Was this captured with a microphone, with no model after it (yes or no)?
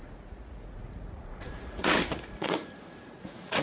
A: no